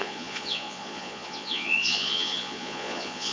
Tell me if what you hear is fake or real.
fake